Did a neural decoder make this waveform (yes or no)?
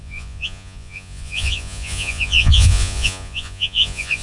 yes